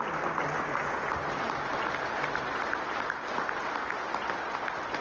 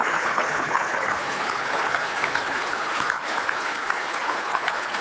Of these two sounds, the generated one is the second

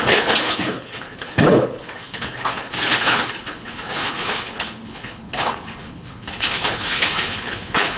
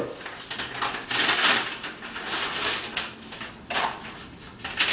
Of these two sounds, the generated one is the first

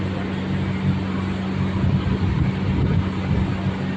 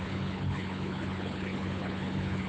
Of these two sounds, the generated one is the second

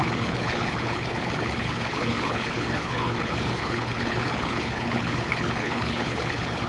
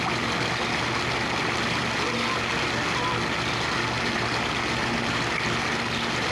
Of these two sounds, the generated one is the first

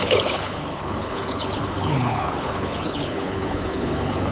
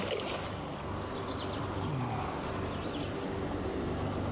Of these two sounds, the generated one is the first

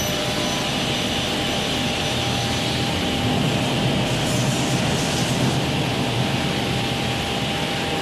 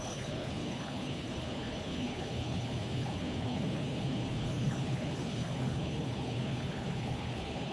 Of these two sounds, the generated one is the second